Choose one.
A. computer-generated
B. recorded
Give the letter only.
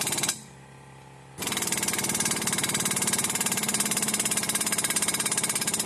B